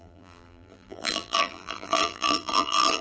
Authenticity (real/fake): fake